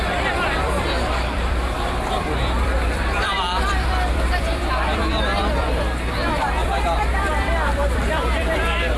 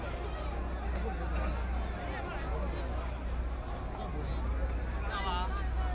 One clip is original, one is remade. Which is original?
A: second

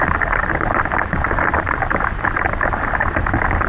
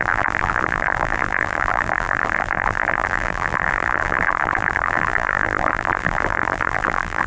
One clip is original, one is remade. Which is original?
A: first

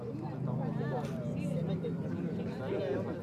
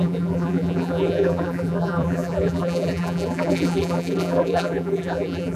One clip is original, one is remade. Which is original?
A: first